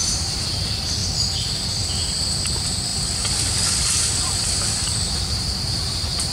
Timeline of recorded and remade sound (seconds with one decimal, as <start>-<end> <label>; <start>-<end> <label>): 0.0-0.6 remade; 0.6-6.3 recorded